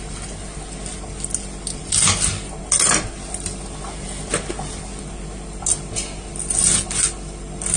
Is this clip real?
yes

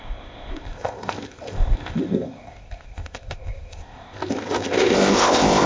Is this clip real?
no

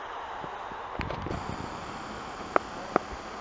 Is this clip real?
yes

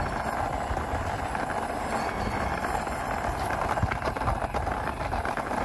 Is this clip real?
yes